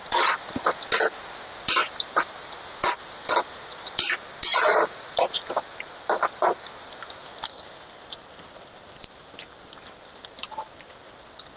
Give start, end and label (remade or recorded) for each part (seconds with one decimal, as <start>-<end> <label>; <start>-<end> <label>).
0.0-11.6 remade